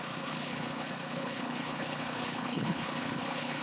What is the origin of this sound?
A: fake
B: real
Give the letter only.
A